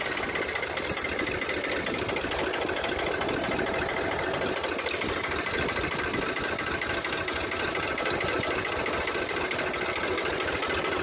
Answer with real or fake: real